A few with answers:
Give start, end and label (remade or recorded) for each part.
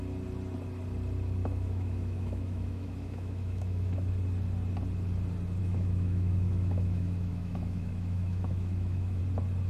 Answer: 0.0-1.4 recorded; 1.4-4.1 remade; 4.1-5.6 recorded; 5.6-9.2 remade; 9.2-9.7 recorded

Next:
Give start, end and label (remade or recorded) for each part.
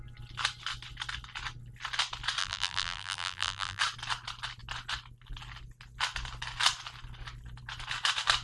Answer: 0.0-2.4 recorded; 2.4-3.8 remade; 3.8-8.4 recorded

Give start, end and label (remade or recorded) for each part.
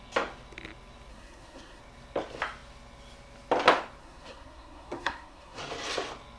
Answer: 0.0-1.1 recorded; 1.1-1.8 remade; 1.8-4.0 recorded; 4.0-5.6 remade; 5.6-6.4 recorded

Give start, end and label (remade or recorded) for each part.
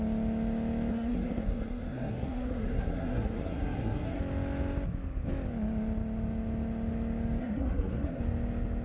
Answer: 0.0-0.9 recorded; 0.9-4.2 remade; 4.2-7.4 recorded; 7.4-8.2 remade; 8.2-8.8 recorded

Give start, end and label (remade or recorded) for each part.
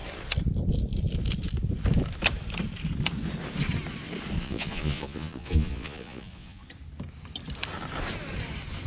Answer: 0.0-4.4 recorded; 4.4-6.6 remade; 6.6-8.9 recorded